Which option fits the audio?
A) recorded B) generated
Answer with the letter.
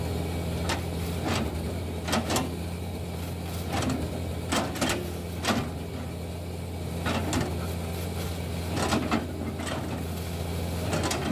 A